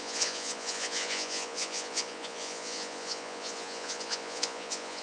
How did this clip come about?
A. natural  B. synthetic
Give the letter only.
B